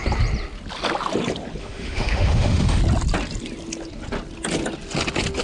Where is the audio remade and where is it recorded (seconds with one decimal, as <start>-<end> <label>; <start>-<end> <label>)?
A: 0.0-1.6 recorded; 1.6-2.8 remade; 2.8-5.4 recorded